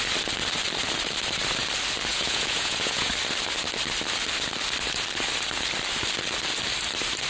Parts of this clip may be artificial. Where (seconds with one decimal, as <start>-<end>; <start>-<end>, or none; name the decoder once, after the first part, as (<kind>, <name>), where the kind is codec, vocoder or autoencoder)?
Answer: 2.1-3.1 (vocoder, Vocos)